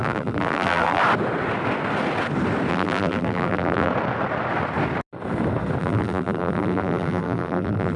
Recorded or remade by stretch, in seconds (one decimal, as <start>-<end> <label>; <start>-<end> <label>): 0.0-1.0 remade; 1.0-2.7 recorded; 2.7-3.9 remade; 3.9-5.8 recorded; 5.8-8.0 remade